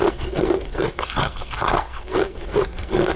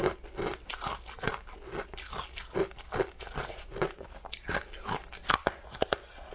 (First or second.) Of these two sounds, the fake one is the first